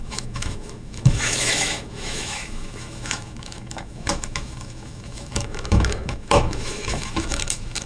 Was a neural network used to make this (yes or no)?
yes